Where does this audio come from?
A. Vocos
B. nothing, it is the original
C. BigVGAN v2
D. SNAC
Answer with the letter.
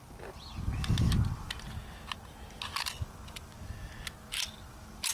B